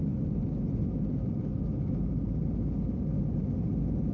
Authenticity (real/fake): real